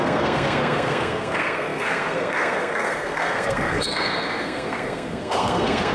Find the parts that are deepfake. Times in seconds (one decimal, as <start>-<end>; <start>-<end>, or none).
0.0-5.9